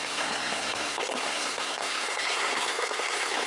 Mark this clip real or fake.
fake